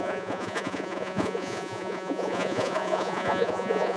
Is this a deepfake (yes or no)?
yes